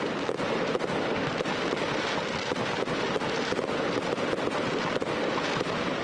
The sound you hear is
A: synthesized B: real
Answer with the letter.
B